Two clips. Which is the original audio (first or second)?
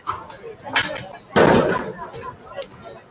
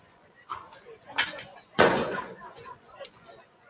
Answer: first